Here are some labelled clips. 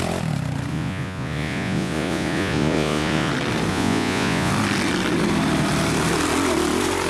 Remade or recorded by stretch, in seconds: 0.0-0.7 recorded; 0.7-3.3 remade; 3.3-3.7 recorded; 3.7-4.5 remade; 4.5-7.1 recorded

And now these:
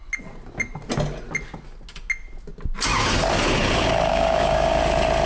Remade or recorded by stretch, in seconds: 0.0-4.1 recorded; 4.1-4.8 remade; 4.8-5.3 recorded

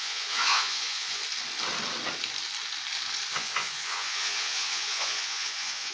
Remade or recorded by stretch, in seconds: 0.0-1.2 remade; 1.2-3.3 recorded; 3.3-5.9 remade

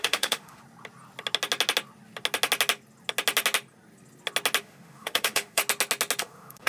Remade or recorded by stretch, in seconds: 0.0-0.6 remade; 0.6-4.6 recorded; 4.6-5.6 remade; 5.6-6.2 recorded; 6.2-6.7 remade